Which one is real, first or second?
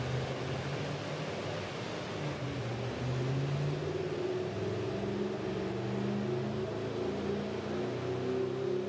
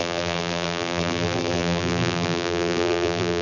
first